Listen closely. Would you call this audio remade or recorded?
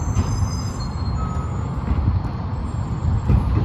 recorded